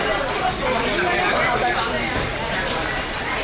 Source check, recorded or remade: recorded